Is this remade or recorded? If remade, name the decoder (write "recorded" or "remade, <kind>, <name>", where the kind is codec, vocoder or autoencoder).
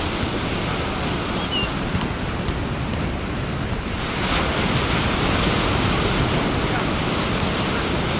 recorded